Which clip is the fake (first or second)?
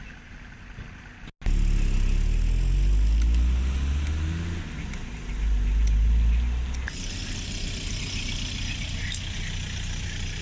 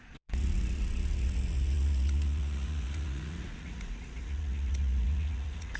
second